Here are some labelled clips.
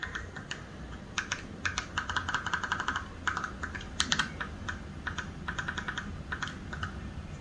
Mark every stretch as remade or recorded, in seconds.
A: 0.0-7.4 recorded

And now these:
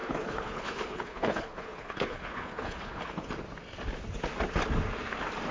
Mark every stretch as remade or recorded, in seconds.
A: 0.0-3.3 remade; 3.3-5.5 recorded

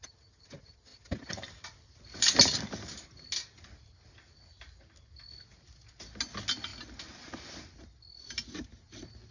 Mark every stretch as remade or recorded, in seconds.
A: 0.0-9.3 recorded

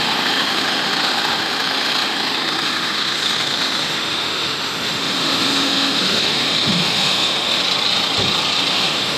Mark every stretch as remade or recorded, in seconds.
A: 0.0-7.6 remade; 7.6-8.7 recorded; 8.7-9.2 remade

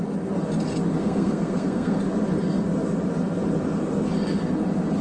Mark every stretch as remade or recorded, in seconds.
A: 0.0-1.0 recorded; 1.0-2.0 remade; 2.0-5.0 recorded

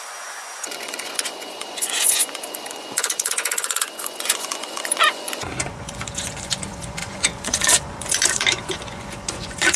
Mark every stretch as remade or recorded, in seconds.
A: 0.0-9.8 remade

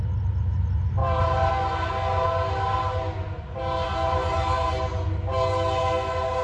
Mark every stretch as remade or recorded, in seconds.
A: 0.0-1.0 recorded; 1.0-1.5 remade; 1.5-6.4 recorded

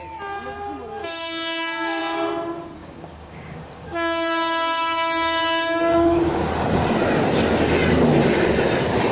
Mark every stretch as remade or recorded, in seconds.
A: 0.0-1.0 recorded; 1.0-2.0 remade; 2.0-2.8 recorded; 2.8-6.5 remade; 6.5-9.1 recorded